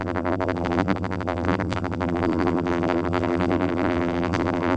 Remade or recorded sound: remade